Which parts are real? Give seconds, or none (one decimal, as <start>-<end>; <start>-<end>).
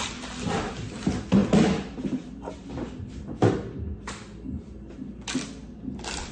0.0-6.3